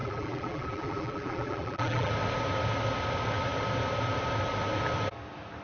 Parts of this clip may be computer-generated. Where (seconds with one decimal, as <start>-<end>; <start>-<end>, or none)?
0.0-2.1